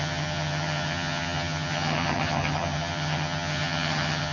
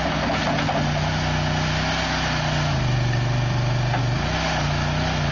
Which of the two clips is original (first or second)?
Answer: second